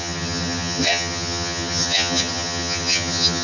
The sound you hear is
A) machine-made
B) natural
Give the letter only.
A